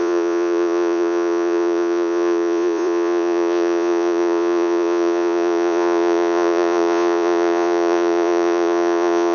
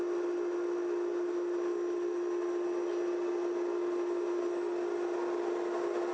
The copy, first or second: first